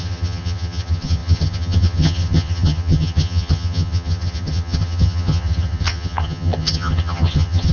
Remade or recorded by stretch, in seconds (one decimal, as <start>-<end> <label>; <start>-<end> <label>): 0.0-7.7 remade